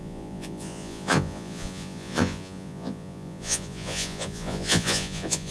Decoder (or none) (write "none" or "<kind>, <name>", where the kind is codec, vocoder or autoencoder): vocoder, Vocos